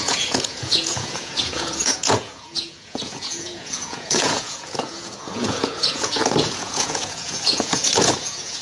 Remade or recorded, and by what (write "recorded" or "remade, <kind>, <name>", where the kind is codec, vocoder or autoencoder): remade, vocoder, Vocos